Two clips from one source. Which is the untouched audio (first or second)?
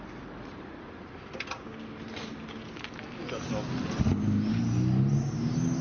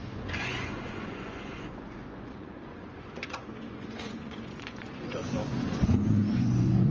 first